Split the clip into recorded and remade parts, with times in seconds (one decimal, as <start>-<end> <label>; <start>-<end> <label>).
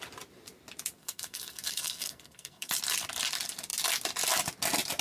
0.0-1.0 recorded; 1.0-2.7 remade; 2.7-5.0 recorded